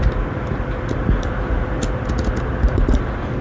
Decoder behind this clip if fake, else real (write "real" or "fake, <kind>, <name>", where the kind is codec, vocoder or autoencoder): real